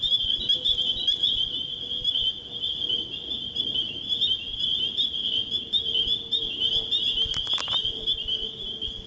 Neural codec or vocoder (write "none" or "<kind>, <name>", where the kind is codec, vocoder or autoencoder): vocoder, BigVGAN v2